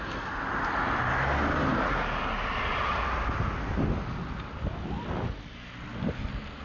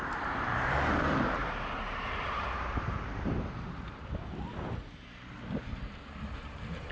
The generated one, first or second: second